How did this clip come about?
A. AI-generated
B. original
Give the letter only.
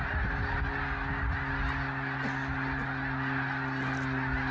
B